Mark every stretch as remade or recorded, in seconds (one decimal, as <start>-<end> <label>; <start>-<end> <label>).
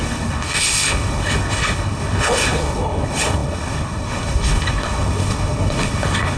0.0-6.4 remade